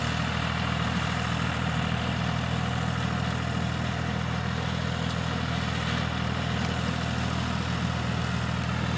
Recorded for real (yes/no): yes